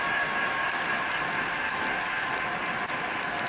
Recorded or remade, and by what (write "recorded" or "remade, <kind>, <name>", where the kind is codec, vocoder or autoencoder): recorded